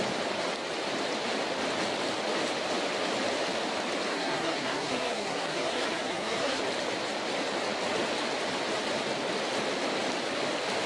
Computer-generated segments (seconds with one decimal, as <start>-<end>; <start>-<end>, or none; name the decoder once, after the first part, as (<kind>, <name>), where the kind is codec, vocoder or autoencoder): 4.1-6.6 (codec, SNAC)